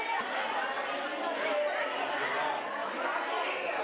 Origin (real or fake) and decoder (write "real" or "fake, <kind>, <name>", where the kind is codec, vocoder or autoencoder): real